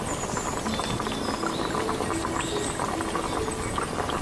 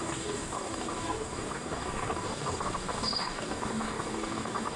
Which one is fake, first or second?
second